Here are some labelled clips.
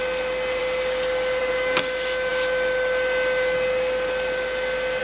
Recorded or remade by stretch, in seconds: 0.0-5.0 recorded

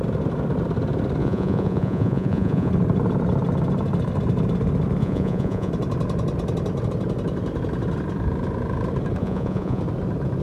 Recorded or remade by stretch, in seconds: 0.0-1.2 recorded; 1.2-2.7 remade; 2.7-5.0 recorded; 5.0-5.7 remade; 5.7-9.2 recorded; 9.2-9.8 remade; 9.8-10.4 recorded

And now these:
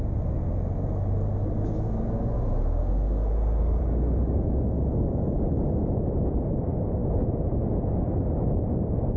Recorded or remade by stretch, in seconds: 0.0-2.8 recorded; 2.8-3.8 remade; 3.8-9.2 recorded